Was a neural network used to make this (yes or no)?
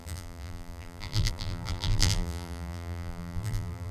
yes